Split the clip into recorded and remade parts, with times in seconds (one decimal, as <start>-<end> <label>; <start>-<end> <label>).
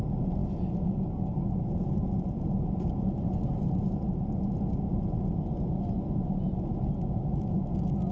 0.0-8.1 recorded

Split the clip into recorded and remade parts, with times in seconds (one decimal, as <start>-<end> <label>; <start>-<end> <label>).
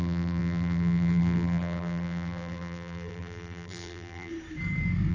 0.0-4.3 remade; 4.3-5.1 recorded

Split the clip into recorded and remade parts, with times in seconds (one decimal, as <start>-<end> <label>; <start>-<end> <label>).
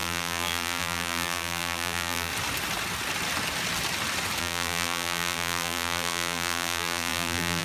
0.0-2.3 remade; 2.3-4.4 recorded; 4.4-7.6 remade